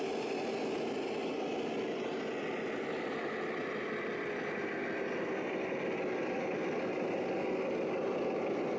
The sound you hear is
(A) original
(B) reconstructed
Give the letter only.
A